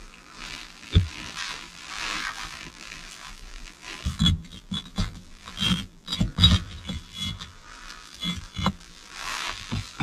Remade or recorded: remade